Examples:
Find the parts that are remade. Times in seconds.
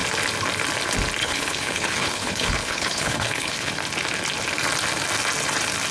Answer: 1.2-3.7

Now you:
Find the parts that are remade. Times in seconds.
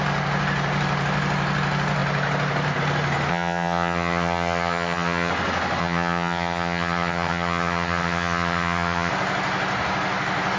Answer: 3.3-5.3; 5.8-9.1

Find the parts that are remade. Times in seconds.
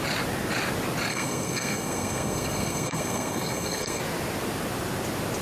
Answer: 1.1-4.0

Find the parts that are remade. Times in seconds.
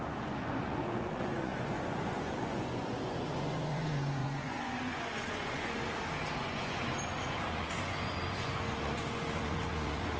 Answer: 0.0-5.8; 6.4-10.2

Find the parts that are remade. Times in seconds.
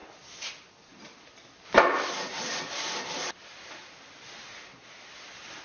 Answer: 0.9-4.3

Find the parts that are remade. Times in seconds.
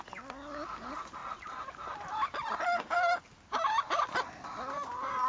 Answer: none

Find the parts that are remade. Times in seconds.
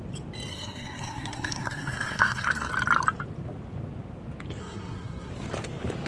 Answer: 0.5-2.7; 4.6-5.3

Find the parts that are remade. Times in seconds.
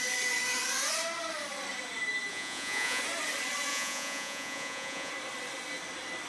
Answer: 2.3-3.0; 3.7-5.1